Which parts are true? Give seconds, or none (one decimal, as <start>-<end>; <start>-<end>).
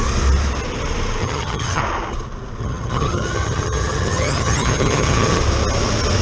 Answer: 0.0-1.2; 1.8-2.6; 5.4-6.2